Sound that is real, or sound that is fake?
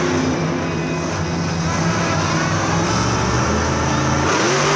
real